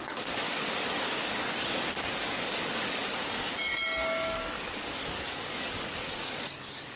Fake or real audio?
fake